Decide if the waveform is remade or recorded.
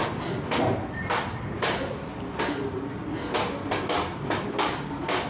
recorded